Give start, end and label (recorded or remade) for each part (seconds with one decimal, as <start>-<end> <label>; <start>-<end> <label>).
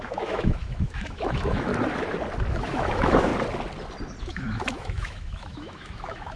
0.0-1.7 remade; 1.7-2.5 recorded; 2.5-3.3 remade; 3.3-4.2 recorded; 4.2-6.4 remade